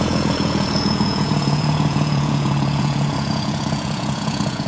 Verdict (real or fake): fake